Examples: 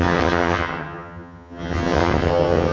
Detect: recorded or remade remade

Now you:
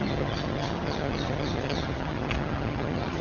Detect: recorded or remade remade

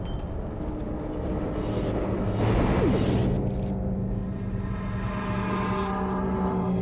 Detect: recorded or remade recorded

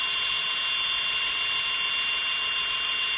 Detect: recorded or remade recorded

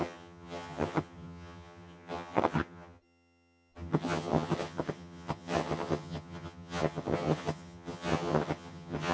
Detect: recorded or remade remade